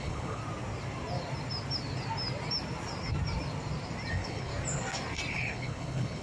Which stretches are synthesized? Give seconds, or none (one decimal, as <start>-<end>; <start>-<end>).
0.0-0.4; 4.1-4.5; 5.3-6.2